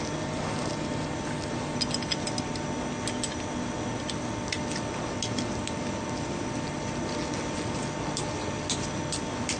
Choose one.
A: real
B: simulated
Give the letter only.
A